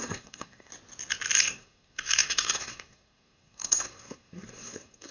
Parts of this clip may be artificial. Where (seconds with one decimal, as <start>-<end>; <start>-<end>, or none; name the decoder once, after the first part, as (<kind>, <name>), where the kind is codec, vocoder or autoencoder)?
0.0-0.7 (codec, SNAC); 1.4-5.1